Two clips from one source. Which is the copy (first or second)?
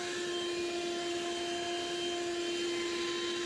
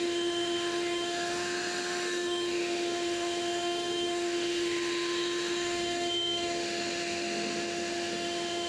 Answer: second